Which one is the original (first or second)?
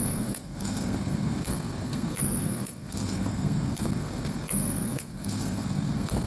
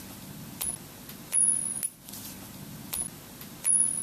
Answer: second